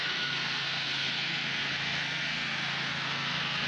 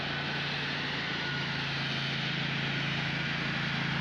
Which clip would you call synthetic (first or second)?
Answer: first